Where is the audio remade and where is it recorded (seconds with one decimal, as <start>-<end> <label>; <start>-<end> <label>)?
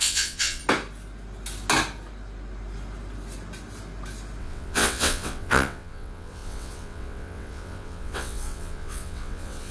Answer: 0.0-0.6 remade; 0.6-4.4 recorded; 4.4-9.7 remade